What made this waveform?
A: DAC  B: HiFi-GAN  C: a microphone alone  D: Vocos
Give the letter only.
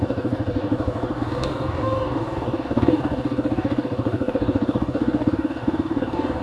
A